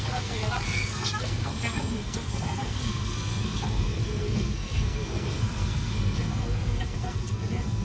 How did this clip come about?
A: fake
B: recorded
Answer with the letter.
A